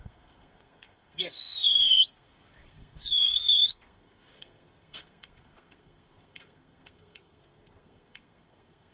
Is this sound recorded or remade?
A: remade